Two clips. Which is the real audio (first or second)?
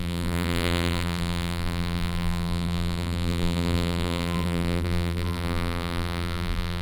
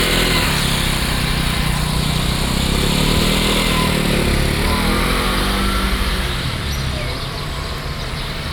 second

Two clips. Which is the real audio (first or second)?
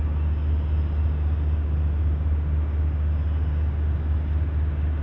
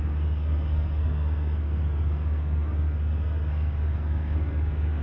first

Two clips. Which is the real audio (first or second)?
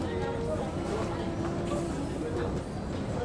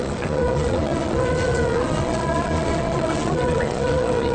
first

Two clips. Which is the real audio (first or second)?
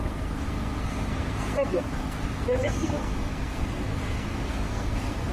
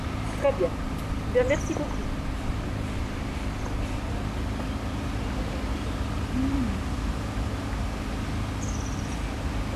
second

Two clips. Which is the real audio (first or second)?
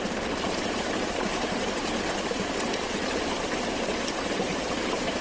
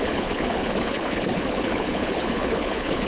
first